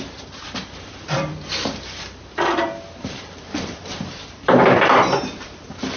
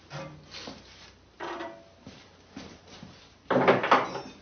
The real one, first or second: second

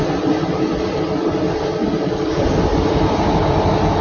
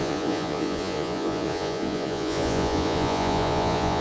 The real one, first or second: first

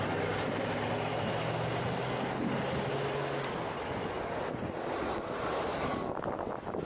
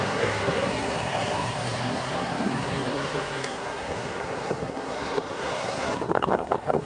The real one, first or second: first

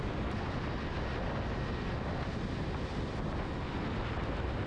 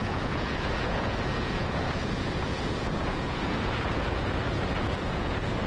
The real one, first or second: first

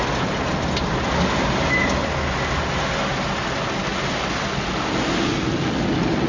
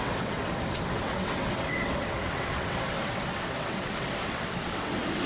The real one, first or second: first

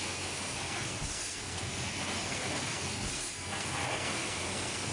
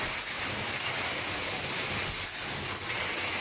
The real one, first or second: second